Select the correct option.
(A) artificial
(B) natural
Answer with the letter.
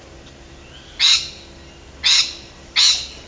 B